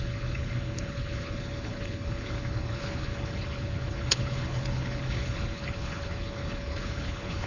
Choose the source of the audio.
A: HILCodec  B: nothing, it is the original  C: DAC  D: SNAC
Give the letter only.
A